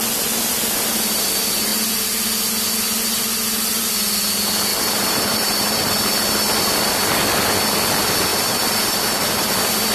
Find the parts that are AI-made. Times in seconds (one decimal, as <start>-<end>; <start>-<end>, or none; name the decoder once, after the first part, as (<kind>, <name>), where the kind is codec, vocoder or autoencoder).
4.7-5.9 (vocoder, BigVGAN v2); 8.3-9.5

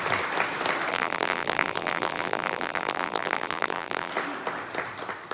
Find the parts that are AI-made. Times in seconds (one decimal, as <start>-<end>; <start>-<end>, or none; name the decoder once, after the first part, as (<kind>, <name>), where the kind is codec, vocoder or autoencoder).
0.9-4.1 (vocoder, BigVGAN v2)